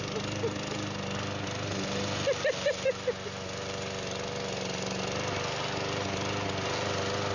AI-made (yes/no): no